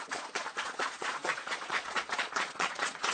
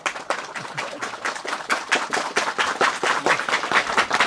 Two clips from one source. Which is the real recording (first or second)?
second